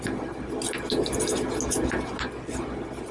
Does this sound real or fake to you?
real